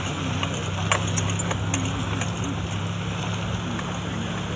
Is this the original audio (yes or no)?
yes